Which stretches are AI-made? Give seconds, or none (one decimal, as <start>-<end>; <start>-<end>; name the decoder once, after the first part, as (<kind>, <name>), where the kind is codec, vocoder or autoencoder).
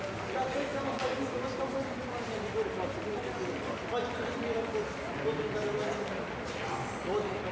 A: none